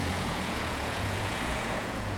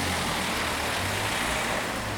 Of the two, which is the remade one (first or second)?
first